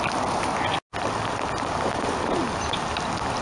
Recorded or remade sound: recorded